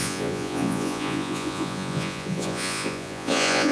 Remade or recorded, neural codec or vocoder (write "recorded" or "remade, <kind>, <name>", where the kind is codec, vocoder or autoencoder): remade, vocoder, Vocos